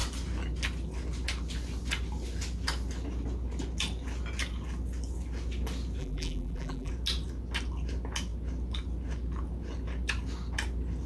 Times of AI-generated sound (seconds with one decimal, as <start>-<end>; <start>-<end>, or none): 6.0-6.9